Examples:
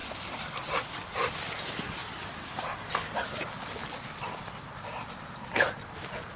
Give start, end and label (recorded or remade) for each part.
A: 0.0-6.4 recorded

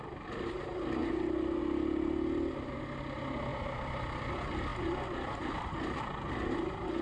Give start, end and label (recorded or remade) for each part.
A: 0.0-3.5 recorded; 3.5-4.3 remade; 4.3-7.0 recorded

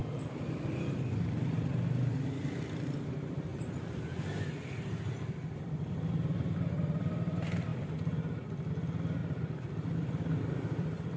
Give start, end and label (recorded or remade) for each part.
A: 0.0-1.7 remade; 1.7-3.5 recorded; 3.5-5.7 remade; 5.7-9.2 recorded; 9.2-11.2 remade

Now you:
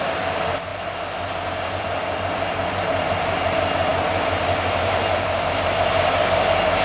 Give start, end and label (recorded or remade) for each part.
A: 0.0-6.8 recorded

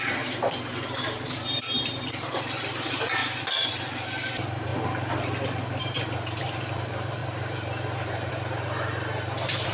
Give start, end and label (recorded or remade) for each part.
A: 0.0-3.2 remade; 3.2-3.7 recorded; 3.7-4.7 remade; 4.7-5.8 recorded; 5.8-9.7 remade

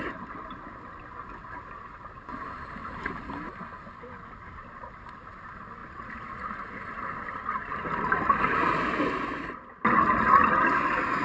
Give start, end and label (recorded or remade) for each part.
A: 0.0-11.2 recorded

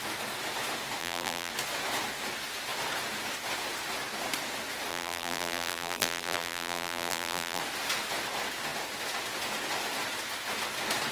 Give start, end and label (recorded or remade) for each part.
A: 0.0-1.0 recorded; 1.0-1.5 remade; 1.5-4.9 recorded; 4.9-7.6 remade; 7.6-11.1 recorded